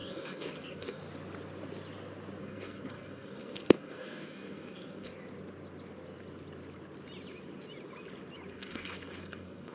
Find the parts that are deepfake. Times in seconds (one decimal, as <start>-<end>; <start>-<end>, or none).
0.0-1.0; 2.4-5.1; 8.5-9.7